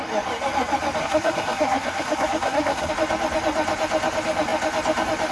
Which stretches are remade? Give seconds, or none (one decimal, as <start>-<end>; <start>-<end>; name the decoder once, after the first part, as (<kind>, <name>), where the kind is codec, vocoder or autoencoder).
1.0-2.9 (codec, SNAC)